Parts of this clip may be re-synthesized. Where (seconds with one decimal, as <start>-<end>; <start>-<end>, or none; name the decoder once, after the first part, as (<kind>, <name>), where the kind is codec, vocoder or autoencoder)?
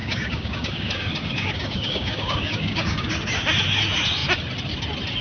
0.0-3.1 (codec, DAC)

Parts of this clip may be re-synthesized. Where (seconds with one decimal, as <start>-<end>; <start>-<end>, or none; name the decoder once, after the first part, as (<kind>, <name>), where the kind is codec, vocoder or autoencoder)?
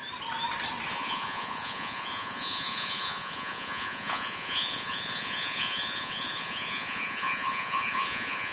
0.9-8.5 (vocoder, Vocos)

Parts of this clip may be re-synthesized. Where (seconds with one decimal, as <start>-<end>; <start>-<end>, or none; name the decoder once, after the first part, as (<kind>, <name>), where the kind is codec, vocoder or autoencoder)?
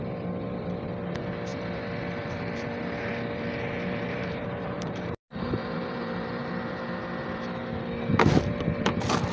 3.5-6.5 (vocoder, BigVGAN v2)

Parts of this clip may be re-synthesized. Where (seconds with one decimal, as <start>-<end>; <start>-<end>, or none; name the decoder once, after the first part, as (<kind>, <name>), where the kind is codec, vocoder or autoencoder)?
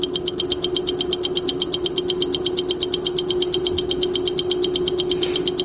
none